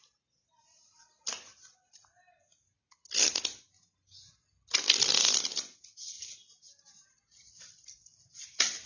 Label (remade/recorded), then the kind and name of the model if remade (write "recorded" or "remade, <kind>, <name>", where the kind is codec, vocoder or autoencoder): recorded